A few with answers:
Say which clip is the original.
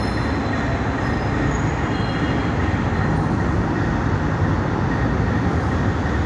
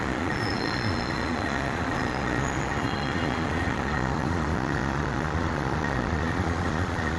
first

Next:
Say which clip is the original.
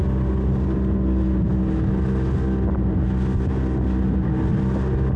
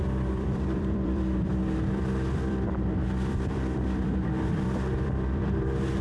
first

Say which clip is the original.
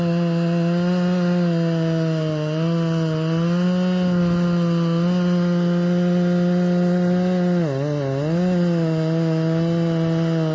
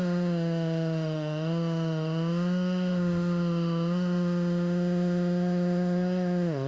first